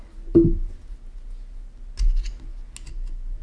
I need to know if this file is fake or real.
real